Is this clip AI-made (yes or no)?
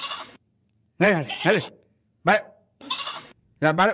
yes